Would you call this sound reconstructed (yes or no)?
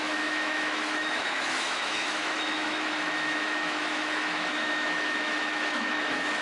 yes